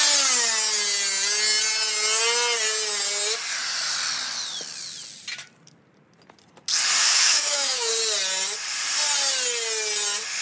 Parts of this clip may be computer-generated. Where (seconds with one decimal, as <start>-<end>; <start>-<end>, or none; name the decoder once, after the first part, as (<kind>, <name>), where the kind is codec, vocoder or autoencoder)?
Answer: 7.0-7.9 (autoencoder, DAC-VAE)